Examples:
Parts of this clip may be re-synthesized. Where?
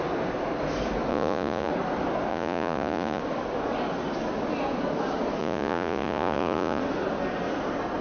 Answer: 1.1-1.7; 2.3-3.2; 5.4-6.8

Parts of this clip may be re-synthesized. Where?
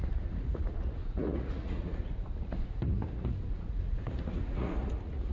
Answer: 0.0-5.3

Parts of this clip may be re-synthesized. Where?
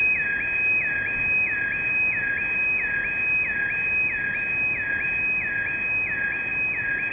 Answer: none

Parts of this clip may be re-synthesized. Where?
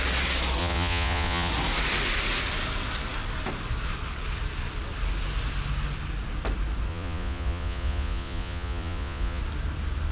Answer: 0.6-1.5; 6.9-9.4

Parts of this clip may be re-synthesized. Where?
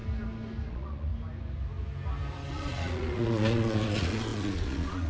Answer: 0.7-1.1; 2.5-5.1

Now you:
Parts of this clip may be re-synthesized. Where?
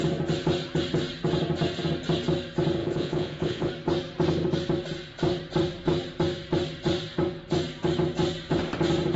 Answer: 2.8-3.7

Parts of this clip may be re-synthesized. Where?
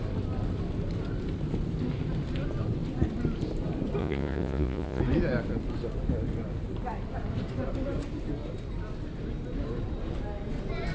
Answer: 4.0-5.0